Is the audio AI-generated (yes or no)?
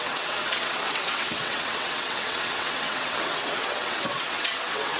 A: yes